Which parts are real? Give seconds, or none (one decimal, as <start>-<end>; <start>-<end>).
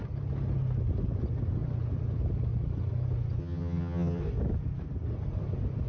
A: 0.0-3.4; 4.2-5.9